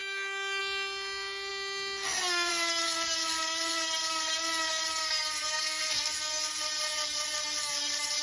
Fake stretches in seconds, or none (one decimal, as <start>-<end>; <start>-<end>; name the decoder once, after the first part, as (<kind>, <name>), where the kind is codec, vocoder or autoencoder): 5.0-6.6 (codec, SNAC)